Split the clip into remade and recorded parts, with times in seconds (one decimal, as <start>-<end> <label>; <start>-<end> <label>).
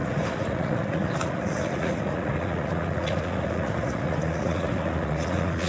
0.0-5.7 remade